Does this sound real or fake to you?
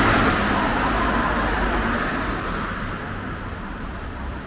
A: real